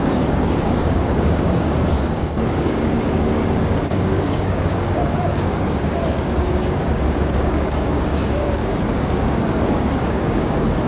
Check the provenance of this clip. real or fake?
fake